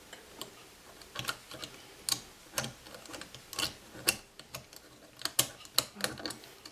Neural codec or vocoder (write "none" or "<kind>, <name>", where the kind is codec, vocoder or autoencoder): none